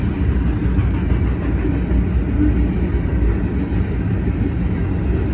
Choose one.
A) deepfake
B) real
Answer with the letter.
B